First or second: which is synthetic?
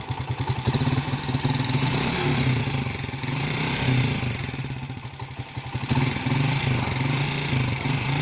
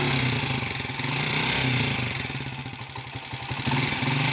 first